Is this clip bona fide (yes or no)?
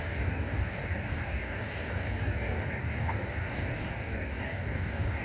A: no